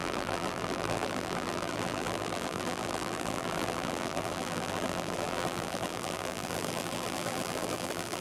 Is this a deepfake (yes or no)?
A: yes